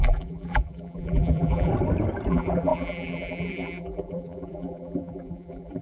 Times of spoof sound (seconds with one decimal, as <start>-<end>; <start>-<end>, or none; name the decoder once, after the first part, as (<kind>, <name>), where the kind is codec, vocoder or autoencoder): 0.0-1.7 (vocoder, BigVGAN v2); 2.3-5.8